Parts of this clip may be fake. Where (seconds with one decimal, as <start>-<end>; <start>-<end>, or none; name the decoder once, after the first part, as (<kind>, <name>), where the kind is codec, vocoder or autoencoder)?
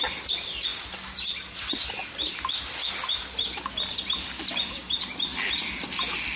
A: none